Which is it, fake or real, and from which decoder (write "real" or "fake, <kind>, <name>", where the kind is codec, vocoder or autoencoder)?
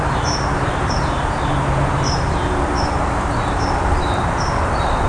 fake, vocoder, BigVGAN v2